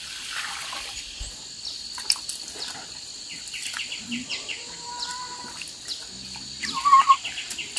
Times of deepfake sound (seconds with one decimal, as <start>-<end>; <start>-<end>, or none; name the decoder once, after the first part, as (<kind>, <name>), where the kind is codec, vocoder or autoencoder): 4.3-4.9 (vocoder, BigVGAN v2)